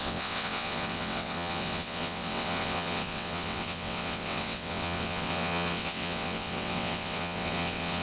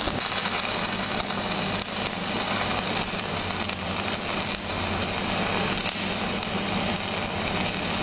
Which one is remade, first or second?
first